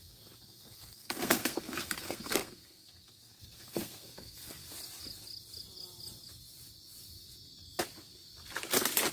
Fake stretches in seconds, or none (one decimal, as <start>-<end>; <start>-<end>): 0.0-4.6